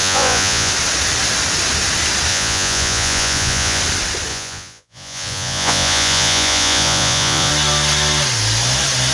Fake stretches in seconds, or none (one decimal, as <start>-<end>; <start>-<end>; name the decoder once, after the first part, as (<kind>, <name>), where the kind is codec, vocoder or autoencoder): 0.0-0.7 (vocoder, Vocos); 2.3-3.8; 4.3-7.5